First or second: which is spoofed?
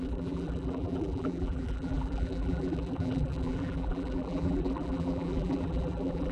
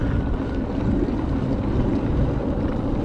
first